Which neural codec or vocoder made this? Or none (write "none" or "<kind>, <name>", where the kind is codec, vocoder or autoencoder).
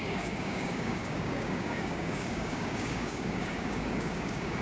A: codec, DAC